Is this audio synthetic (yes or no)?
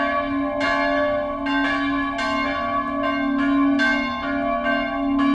no